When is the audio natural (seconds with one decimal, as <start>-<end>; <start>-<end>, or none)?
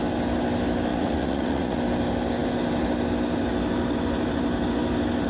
0.0-0.9; 1.8-5.3